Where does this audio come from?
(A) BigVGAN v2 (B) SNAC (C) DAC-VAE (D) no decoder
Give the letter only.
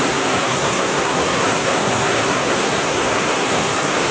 B